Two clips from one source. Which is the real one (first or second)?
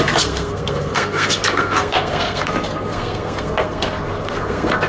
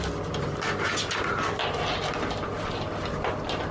second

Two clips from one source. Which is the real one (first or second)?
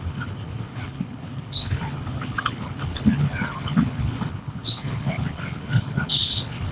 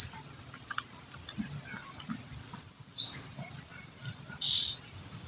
second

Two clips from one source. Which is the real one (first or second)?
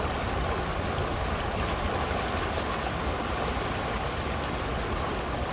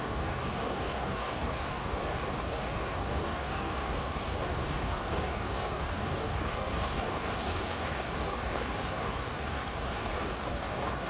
first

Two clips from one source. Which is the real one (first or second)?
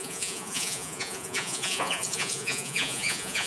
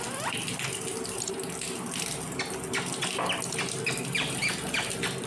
second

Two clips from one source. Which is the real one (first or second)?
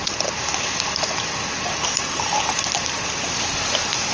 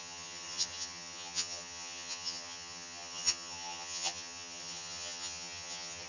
first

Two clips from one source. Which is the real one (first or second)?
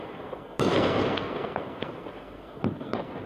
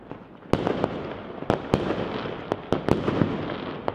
second